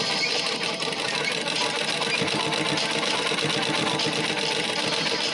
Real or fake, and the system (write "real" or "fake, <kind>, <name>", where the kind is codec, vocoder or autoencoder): real